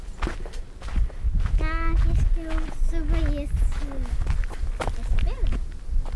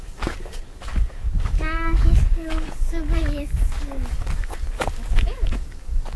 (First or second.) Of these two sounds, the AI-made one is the second